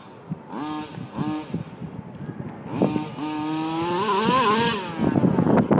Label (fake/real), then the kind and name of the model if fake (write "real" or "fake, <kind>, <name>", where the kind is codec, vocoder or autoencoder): real